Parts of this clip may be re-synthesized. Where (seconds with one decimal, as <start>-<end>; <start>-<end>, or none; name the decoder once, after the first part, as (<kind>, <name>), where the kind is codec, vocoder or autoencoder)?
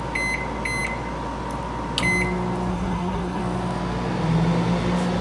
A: 2.7-3.4 (codec, SNAC)